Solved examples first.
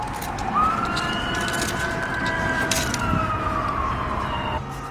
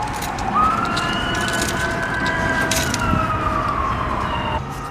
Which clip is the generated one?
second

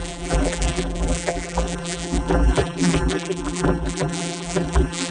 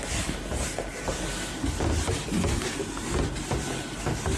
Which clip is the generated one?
first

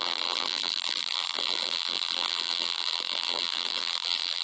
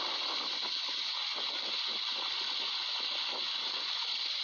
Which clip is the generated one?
first